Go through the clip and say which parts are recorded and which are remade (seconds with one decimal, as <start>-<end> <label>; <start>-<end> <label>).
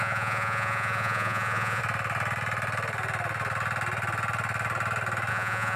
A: 0.0-1.8 remade; 1.8-5.3 recorded; 5.3-5.8 remade